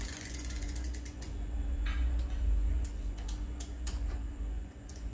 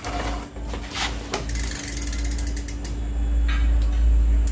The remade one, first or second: first